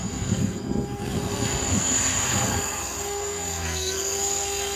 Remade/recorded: remade